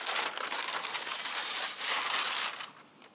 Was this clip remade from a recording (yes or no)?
no